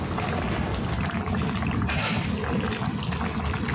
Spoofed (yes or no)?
no